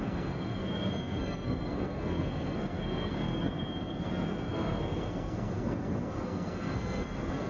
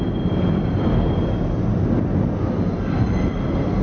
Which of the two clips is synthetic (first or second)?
first